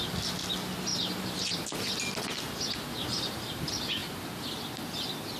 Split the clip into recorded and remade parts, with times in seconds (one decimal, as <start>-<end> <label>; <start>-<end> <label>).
0.0-0.9 recorded; 0.9-1.6 remade; 1.6-3.1 recorded; 3.1-3.6 remade; 3.6-5.4 recorded